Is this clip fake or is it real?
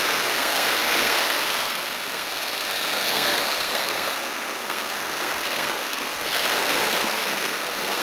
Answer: fake